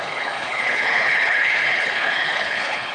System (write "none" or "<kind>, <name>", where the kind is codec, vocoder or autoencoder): codec, HILCodec